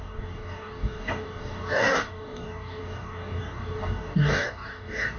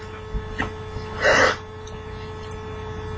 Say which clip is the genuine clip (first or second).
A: second